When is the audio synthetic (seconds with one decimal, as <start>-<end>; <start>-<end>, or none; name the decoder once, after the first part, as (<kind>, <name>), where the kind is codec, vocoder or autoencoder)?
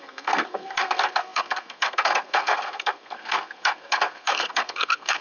0.0-5.2 (codec, SNAC)